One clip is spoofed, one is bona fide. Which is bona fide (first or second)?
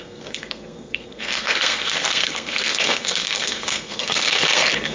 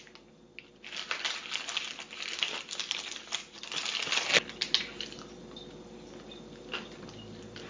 second